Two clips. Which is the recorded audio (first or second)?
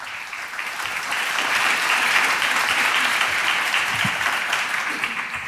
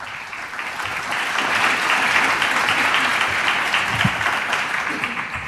second